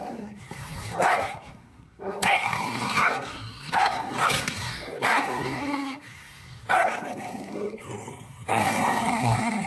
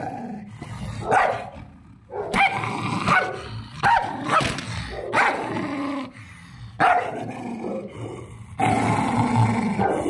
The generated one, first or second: first